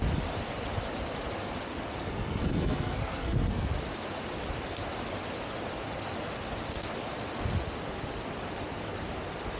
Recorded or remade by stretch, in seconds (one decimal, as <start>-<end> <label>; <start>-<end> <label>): 0.0-2.0 recorded; 2.0-3.7 remade; 3.7-9.6 recorded